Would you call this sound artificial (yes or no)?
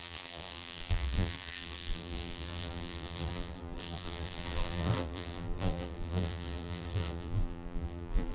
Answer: yes